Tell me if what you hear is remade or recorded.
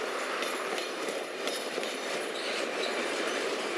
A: remade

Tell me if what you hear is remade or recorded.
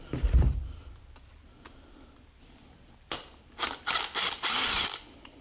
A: remade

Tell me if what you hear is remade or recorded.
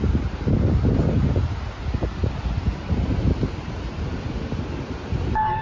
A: recorded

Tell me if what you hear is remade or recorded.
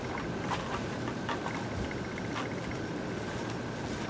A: remade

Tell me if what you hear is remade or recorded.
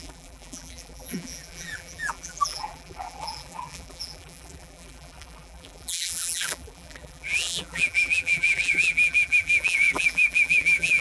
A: remade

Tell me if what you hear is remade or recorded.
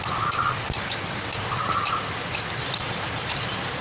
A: recorded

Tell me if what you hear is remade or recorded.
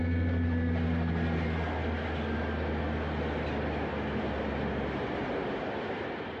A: recorded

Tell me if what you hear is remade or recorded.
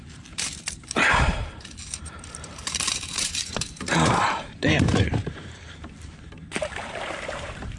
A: remade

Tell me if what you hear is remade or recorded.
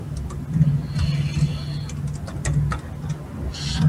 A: recorded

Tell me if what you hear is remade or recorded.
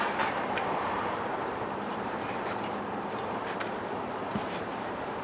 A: remade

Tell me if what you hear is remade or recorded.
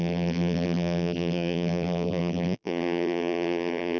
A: remade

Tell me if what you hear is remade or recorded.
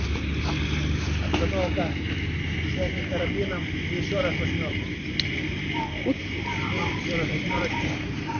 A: recorded